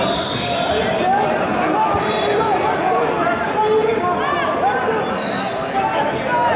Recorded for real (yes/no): yes